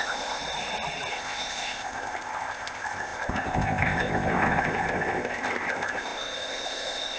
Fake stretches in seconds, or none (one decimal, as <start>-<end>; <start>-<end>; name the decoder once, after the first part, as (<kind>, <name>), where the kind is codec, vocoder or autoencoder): 0.0-0.4 (codec, ZipCodec); 1.1-7.2